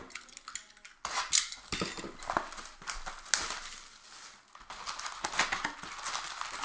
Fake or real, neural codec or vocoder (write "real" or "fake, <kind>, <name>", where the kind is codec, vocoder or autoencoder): real